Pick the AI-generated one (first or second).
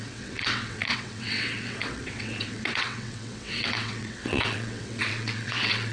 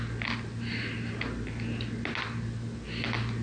first